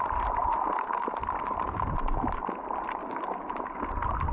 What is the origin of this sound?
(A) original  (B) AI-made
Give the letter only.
A